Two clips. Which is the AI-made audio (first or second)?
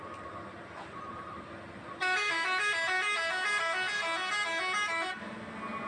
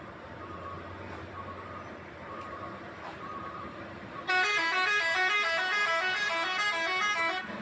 second